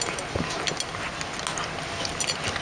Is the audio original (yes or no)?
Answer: yes